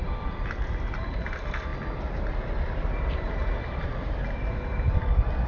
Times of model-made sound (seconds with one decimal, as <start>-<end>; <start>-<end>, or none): none